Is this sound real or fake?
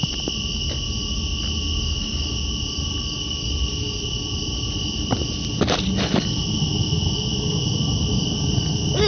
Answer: real